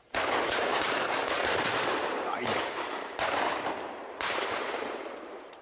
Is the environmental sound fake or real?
fake